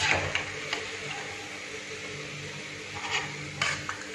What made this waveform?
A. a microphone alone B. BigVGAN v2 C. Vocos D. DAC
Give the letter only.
A